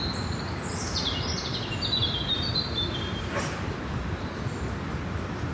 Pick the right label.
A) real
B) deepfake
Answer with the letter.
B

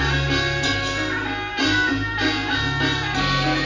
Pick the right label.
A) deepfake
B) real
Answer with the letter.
B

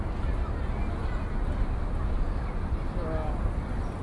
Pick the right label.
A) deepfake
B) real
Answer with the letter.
B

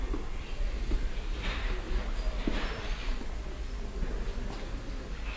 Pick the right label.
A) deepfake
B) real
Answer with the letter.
B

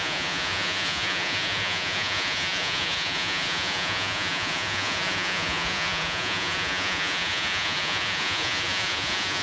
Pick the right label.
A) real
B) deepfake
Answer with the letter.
B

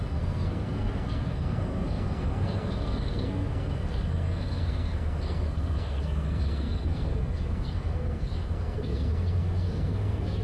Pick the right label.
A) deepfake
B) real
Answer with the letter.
A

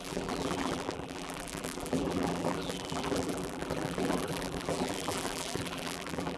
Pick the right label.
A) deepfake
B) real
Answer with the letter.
A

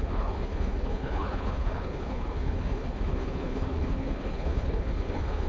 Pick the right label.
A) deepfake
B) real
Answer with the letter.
A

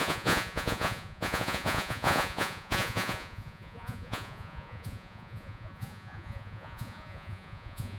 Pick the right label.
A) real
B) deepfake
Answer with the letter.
B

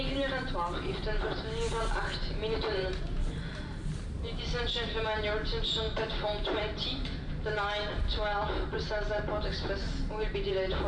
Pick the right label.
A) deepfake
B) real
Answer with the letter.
A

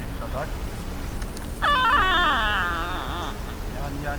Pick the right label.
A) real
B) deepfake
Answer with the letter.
A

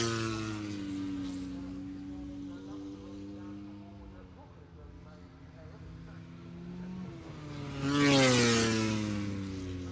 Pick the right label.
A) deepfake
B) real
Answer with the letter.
B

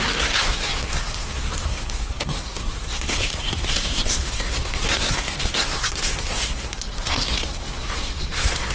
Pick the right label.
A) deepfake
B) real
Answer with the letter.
A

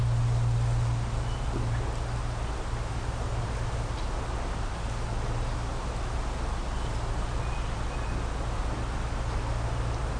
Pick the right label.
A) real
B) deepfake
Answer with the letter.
A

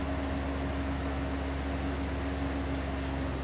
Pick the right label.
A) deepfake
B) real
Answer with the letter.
B